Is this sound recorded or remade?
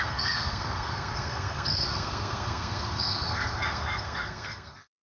remade